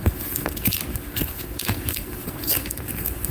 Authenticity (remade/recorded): remade